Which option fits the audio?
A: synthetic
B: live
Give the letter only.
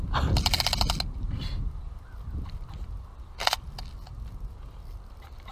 B